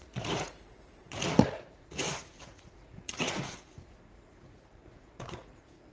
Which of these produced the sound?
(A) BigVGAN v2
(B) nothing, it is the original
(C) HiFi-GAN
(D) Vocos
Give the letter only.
D